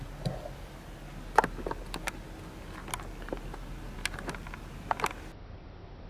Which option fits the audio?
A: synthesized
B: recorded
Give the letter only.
B